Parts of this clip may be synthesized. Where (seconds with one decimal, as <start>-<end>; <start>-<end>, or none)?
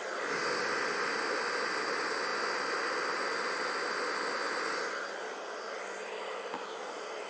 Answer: none